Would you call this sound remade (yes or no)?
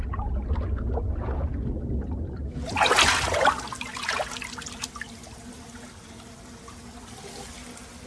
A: no